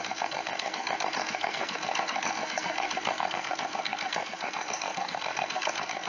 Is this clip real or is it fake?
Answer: fake